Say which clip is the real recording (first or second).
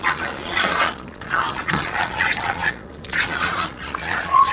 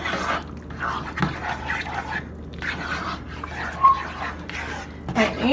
second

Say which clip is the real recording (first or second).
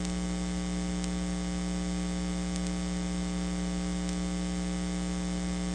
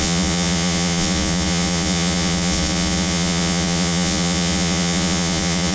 first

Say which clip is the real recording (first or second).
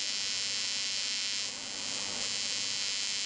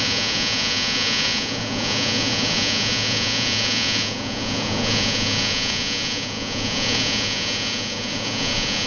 first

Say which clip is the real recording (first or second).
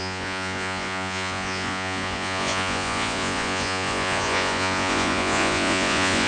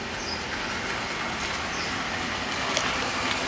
second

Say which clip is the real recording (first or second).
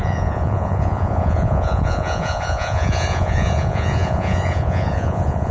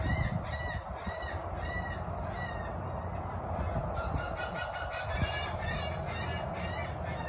second